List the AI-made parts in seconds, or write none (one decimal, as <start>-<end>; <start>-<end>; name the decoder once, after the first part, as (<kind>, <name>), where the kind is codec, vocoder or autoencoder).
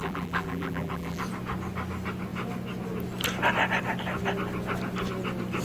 0.0-1.2 (vocoder, BigVGAN v2)